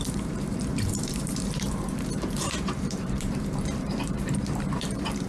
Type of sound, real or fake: fake